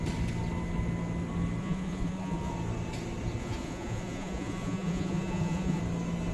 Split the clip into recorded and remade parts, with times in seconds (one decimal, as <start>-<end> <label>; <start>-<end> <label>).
0.0-1.6 recorded; 1.6-2.5 remade; 2.5-3.4 recorded; 3.4-5.8 remade; 5.8-6.3 recorded